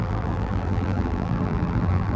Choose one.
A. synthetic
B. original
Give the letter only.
A